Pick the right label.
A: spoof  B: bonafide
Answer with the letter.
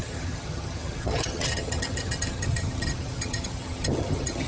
A